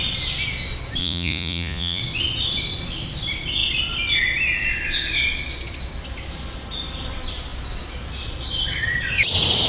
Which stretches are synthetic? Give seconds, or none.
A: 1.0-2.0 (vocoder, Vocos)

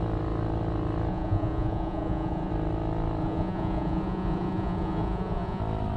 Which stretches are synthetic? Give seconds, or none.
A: 1.1-2.5 (vocoder, Vocos); 3.2-5.6

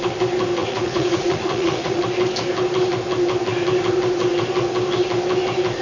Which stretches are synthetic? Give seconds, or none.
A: 0.6-2.0 (vocoder, Vocos)

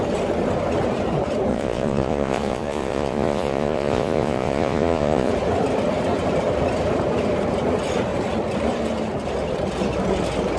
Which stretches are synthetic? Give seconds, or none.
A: 1.5-5.3 (vocoder, Vocos)

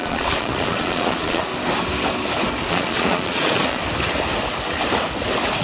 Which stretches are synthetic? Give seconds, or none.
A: 0.0-1.5 (vocoder, Vocos); 2.7-3.8

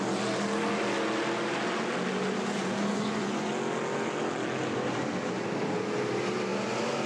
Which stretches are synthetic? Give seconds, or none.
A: 2.9-3.5 (vocoder, Vocos)

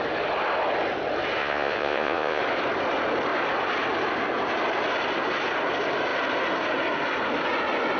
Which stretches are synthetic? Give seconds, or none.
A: 1.4-2.4 (vocoder, Vocos)

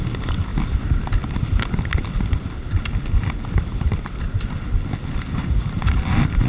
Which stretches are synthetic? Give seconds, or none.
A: 5.4-6.0 (vocoder, Vocos)